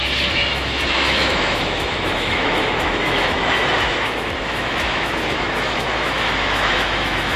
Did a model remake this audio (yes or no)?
yes